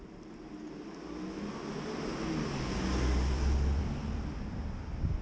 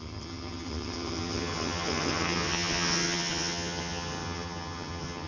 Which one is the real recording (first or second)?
first